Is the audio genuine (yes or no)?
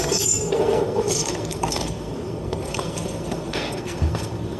no